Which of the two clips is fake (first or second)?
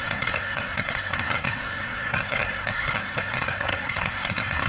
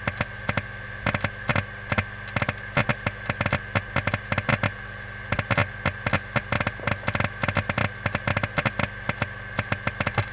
first